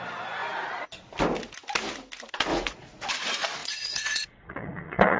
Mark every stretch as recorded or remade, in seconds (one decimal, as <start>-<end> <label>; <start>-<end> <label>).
0.0-2.5 recorded; 2.5-3.1 remade; 3.1-3.6 recorded; 3.6-5.2 remade